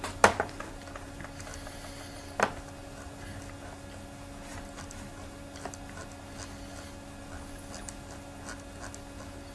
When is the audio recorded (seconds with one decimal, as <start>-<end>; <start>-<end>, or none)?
0.0-9.5